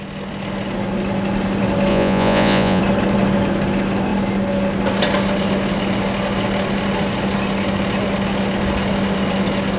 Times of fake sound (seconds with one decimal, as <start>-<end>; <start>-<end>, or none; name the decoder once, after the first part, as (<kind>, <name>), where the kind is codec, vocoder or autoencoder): 1.9-2.8 (vocoder, Vocos)